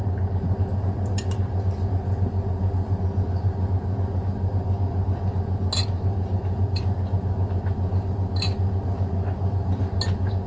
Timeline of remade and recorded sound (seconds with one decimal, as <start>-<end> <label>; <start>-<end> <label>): 0.0-6.3 recorded; 6.3-6.8 remade; 6.8-10.5 recorded